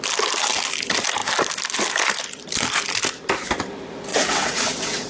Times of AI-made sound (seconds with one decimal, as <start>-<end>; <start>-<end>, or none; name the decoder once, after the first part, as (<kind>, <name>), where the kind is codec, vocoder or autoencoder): 4.1-5.1 (vocoder, WaveNeXt)